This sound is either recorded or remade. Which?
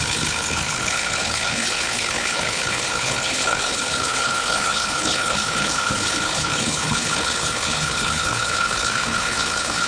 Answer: remade